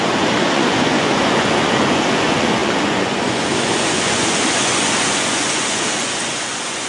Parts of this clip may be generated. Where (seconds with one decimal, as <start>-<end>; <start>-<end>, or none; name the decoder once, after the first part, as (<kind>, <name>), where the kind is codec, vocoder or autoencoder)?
0.0-6.9 (vocoder, Vocos)